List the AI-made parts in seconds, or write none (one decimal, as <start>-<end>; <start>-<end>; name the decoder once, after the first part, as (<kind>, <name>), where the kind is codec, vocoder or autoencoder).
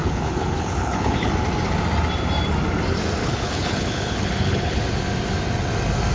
0.0-1.3 (codec, HILCodec); 3.2-4.8